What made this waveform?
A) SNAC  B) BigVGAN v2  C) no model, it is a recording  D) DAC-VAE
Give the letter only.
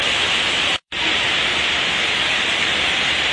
B